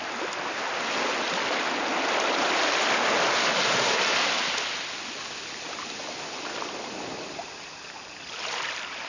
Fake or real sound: real